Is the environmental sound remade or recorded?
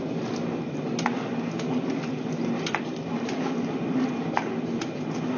recorded